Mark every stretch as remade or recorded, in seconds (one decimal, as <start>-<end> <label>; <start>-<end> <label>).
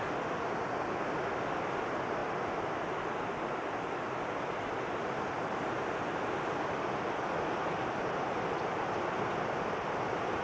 0.0-10.4 recorded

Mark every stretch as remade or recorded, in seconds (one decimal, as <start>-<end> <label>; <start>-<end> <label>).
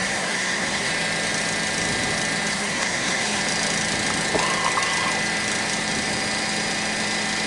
0.0-0.9 remade; 0.9-2.5 recorded; 2.5-3.4 remade; 3.4-7.5 recorded